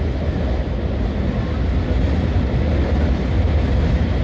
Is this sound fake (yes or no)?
no